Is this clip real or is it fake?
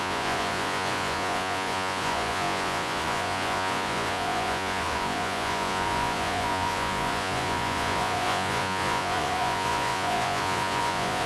fake